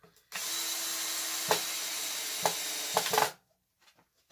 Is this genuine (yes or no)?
yes